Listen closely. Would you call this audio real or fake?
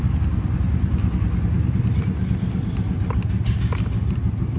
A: real